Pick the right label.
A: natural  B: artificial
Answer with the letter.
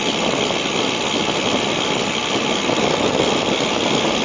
A